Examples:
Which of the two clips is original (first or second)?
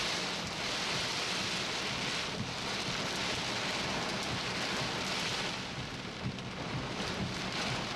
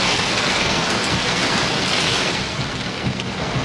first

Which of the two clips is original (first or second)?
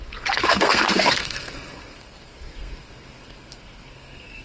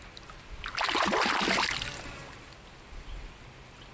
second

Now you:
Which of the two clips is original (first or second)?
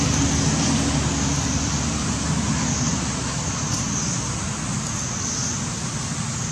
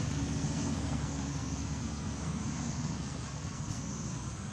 first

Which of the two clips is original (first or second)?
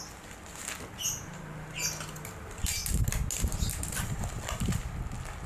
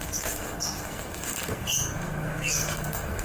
first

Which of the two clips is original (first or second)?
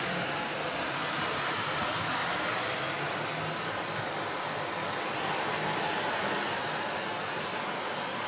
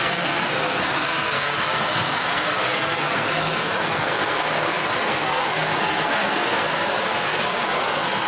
first